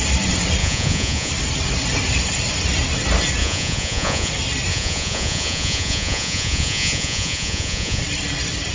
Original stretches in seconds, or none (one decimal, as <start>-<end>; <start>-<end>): 0.0-0.6; 1.3-3.4; 4.3-4.7; 8.0-8.7